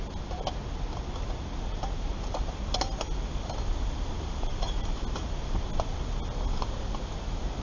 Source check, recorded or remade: recorded